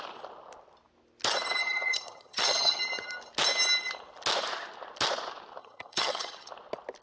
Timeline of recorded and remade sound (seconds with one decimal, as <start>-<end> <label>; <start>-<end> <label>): 0.0-1.6 recorded; 1.6-2.8 remade; 2.8-5.6 recorded; 5.6-6.5 remade; 6.5-7.0 recorded